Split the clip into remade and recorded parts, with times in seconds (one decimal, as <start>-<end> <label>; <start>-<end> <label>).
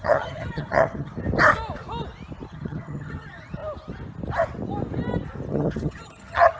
0.0-1.1 remade; 1.1-2.5 recorded; 2.5-3.6 remade; 3.6-5.5 recorded; 5.5-6.6 remade